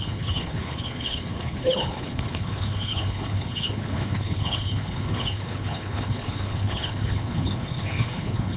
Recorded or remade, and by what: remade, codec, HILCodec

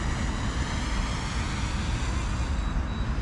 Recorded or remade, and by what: recorded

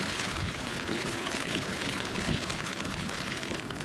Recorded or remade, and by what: remade, codec, HILCodec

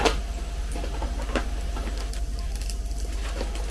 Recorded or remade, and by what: recorded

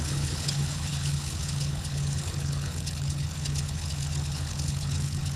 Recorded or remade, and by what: remade, codec, HILCodec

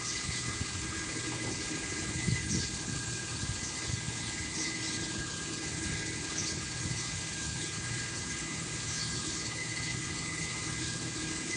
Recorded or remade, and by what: remade, codec, HILCodec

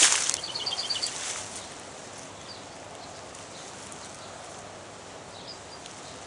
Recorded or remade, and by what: recorded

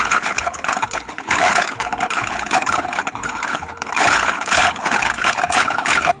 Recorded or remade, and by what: remade, codec, HILCodec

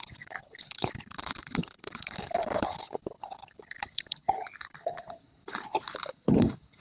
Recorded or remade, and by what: remade, codec, HILCodec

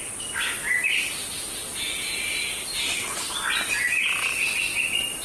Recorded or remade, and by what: recorded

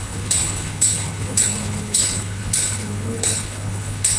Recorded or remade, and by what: remade, codec, HILCodec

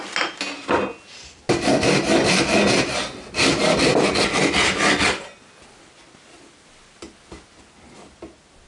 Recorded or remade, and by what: recorded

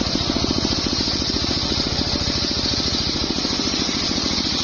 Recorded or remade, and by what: recorded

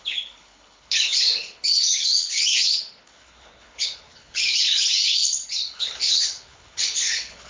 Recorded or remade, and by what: remade, codec, HILCodec